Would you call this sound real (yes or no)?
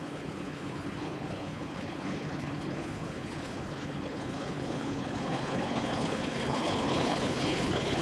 no